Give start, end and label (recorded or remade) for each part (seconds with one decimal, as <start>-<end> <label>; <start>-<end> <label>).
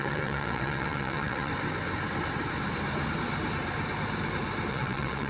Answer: 0.0-1.5 remade; 1.5-4.7 recorded; 4.7-5.3 remade